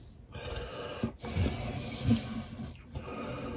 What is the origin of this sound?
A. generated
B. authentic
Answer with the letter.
B